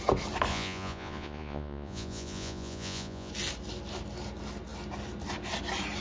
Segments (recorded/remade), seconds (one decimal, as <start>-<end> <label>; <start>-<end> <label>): 0.0-0.5 recorded; 0.5-3.3 remade; 3.3-6.0 recorded